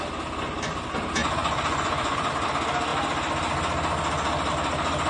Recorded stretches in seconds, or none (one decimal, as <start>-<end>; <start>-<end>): 0.0-1.2; 2.3-5.1